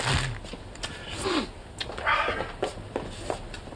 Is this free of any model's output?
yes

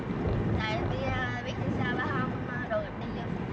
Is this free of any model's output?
yes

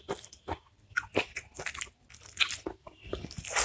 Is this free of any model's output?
yes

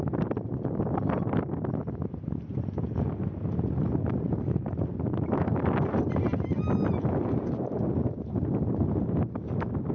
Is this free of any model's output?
yes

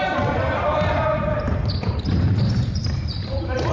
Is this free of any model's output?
no